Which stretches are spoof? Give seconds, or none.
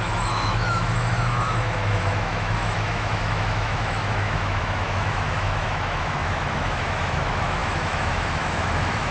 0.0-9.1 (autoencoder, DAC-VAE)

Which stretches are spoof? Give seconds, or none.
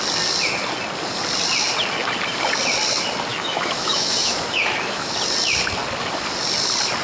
3.3-5.1 (autoencoder, DAC-VAE)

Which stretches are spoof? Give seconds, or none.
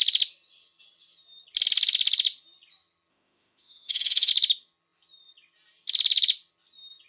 3.1-4.3 (autoencoder, DAC-VAE)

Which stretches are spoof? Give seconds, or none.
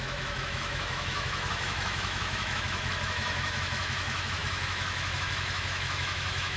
0.0-6.6 (autoencoder, DAC-VAE)